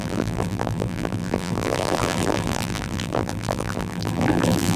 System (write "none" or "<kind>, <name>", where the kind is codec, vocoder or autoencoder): vocoder, BigVGAN v2